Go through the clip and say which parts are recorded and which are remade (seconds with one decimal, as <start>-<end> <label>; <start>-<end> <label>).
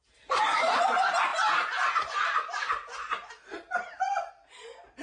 0.0-5.0 recorded